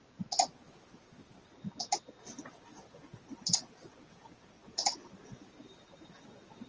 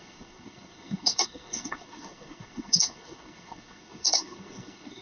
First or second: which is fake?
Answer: second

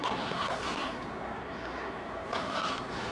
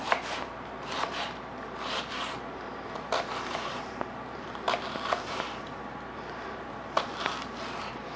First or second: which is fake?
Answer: first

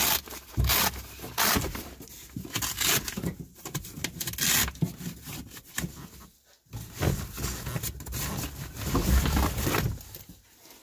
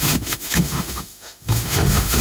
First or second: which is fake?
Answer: second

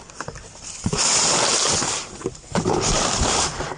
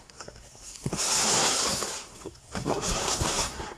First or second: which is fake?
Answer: second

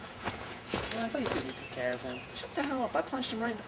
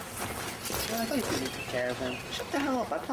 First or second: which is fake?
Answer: first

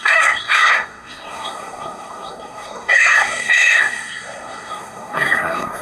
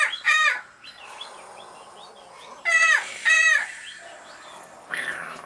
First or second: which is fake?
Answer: first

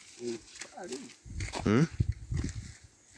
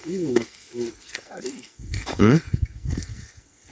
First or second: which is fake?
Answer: second